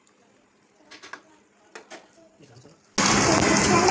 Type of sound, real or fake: real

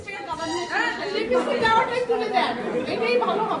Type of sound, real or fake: real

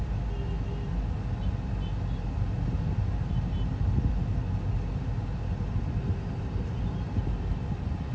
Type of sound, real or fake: real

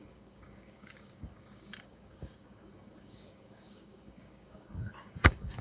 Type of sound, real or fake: fake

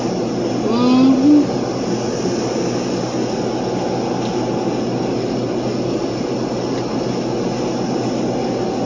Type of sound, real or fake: real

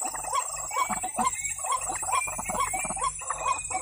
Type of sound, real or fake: real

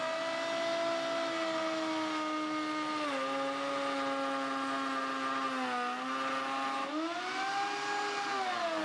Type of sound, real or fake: real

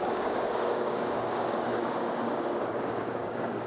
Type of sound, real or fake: fake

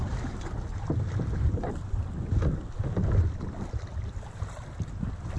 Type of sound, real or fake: real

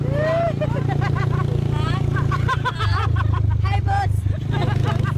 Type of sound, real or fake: real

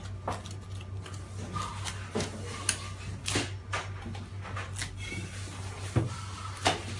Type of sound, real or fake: real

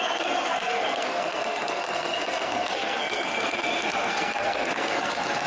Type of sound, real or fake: fake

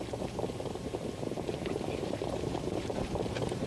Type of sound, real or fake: fake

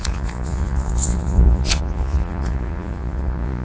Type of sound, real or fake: fake